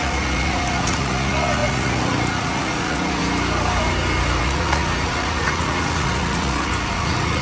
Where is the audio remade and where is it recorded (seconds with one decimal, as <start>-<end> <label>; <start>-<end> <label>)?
0.0-3.2 remade; 3.2-4.4 recorded; 4.4-7.4 remade